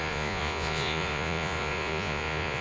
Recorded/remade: remade